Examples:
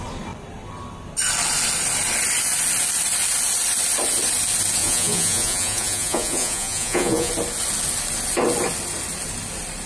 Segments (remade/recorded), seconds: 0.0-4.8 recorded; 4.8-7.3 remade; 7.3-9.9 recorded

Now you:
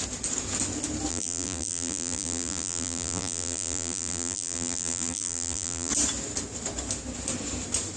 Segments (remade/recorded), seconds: 0.0-1.1 recorded; 1.1-5.9 remade; 5.9-8.0 recorded

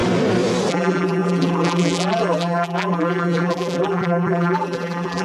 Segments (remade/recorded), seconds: 0.0-0.7 recorded; 0.7-5.2 remade

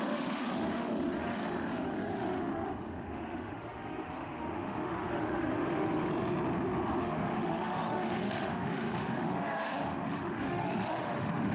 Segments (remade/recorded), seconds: 0.0-6.1 remade; 6.1-7.0 recorded; 7.0-11.5 remade

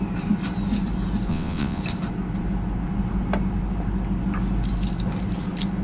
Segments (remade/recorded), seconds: 0.0-1.3 recorded; 1.3-1.8 remade; 1.8-5.8 recorded